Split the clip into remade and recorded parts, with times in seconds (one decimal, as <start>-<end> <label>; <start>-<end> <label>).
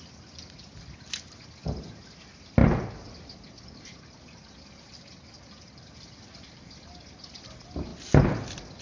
0.0-8.8 recorded